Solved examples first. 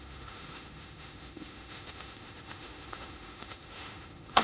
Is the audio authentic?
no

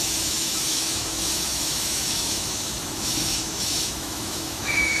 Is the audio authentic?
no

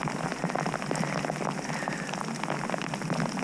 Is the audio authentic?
yes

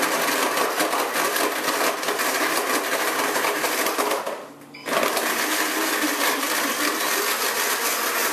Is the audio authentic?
yes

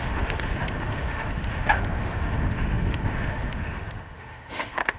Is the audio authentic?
no